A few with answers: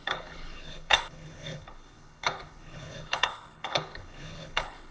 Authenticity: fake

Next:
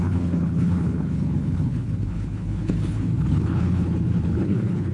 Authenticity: fake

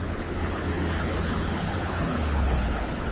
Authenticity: fake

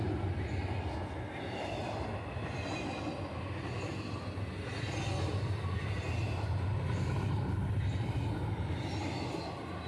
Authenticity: real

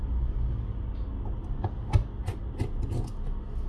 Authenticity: real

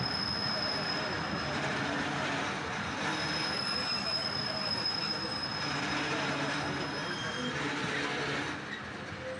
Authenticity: real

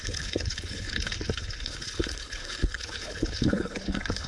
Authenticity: fake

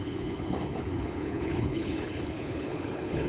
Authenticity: fake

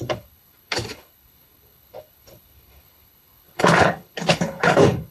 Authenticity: fake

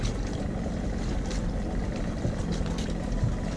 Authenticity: real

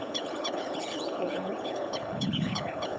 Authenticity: fake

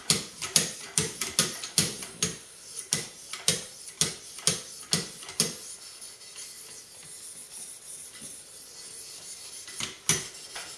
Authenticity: real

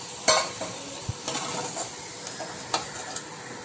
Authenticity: real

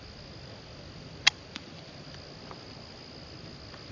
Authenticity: real